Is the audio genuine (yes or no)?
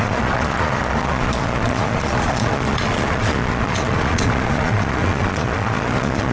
no